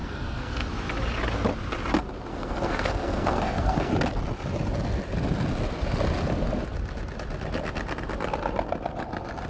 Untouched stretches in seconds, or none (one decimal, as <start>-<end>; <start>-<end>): 0.7-2.3; 3.9-9.5